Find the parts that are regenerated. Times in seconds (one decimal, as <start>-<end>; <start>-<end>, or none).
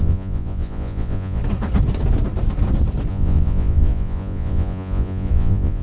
0.0-1.4; 3.1-5.8